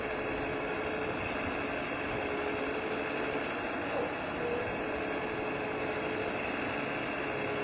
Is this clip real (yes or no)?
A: yes